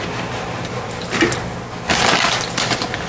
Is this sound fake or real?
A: real